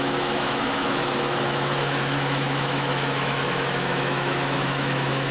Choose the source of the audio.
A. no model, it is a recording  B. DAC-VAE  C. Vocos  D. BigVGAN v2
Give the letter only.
B